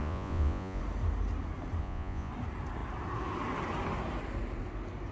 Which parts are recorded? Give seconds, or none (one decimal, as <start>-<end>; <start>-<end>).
0.8-1.8; 2.3-5.1